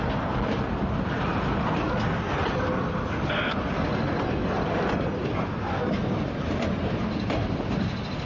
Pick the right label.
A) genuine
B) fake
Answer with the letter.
A